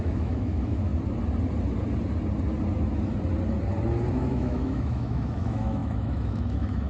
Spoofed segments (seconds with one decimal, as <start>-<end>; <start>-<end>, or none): 0.0-0.9; 4.1-6.9